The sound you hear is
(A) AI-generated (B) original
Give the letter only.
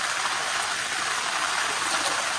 B